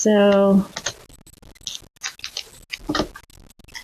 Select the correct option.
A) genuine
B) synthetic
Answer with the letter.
A